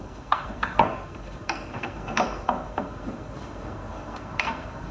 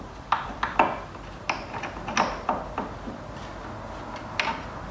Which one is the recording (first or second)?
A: second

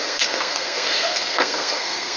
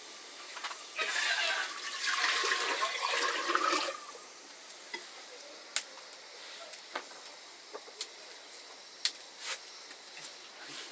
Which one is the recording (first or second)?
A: second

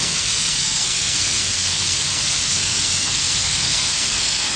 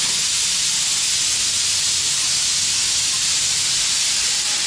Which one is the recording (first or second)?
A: second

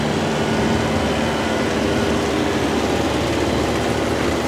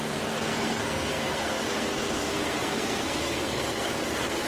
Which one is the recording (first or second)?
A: first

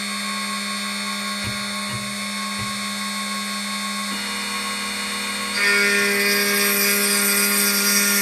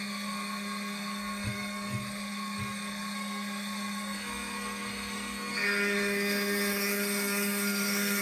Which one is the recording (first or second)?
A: first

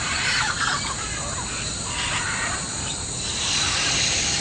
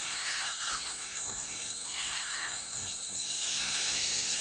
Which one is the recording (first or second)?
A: first